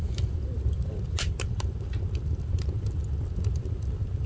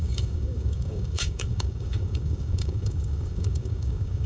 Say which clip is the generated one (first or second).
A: second